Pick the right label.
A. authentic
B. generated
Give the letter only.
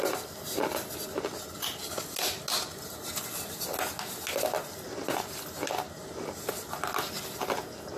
A